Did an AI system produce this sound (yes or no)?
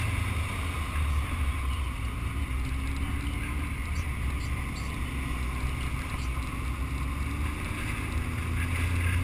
no